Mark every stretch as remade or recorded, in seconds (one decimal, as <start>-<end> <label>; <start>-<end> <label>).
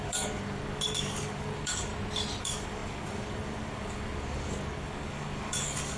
0.0-1.9 remade; 1.9-2.4 recorded; 2.4-6.0 remade